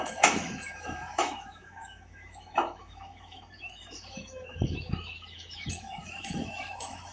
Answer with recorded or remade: remade